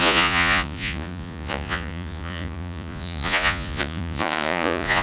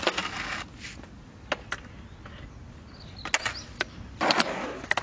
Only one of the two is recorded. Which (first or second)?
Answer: second